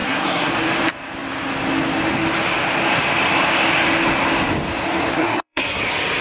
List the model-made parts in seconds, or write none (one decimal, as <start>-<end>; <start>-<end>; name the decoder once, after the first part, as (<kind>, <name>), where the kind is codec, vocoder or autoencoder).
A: 0.0-0.5 (codec, SNAC); 5.1-5.8